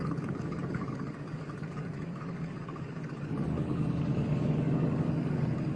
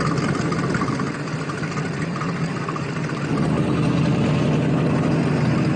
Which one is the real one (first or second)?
second